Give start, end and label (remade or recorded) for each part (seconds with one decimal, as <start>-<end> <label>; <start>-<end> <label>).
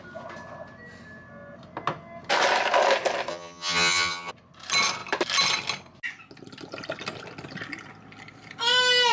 0.0-3.3 recorded; 3.3-4.3 remade; 4.3-9.1 recorded